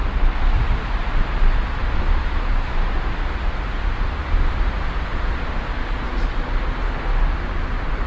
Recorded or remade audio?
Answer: recorded